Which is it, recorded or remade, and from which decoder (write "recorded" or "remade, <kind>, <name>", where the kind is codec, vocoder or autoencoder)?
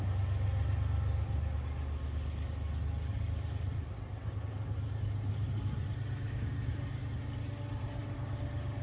recorded